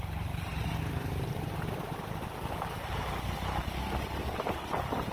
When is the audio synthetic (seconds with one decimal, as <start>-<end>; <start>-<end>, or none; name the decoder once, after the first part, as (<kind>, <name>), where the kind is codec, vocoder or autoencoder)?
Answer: none